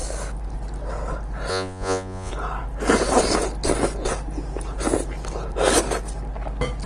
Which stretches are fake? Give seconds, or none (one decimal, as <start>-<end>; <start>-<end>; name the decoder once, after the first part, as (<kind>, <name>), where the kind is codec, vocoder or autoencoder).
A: 1.5-2.3 (vocoder, Vocos)